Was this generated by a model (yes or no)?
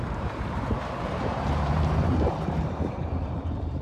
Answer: yes